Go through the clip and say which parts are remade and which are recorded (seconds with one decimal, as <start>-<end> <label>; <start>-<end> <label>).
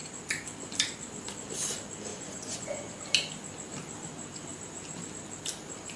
0.0-2.1 recorded; 2.1-2.9 remade; 2.9-6.0 recorded